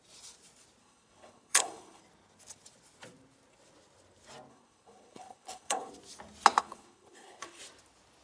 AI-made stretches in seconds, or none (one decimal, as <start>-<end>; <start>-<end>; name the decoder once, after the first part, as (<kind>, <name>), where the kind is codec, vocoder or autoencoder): 0.8-2.0 (codec, HILCodec); 4.5-5.9; 6.6-7.6